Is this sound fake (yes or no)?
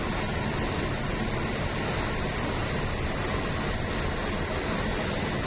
no